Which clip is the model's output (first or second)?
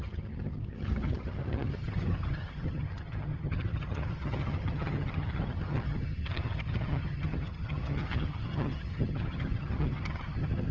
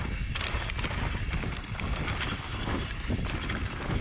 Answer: first